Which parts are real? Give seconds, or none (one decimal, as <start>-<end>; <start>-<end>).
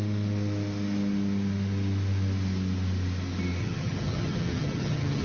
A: 0.0-3.6